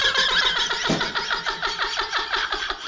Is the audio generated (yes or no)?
no